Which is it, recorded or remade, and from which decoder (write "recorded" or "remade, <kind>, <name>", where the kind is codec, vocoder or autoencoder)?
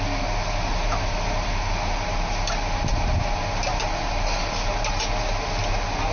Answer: recorded